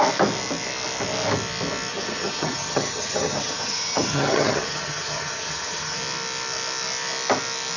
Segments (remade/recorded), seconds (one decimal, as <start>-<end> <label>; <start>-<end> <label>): 0.0-1.9 recorded; 1.9-6.0 remade; 6.0-7.8 recorded